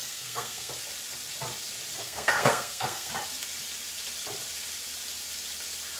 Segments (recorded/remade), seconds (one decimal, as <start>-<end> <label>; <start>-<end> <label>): 0.0-0.7 remade; 0.7-2.0 recorded; 2.0-3.1 remade; 3.1-6.0 recorded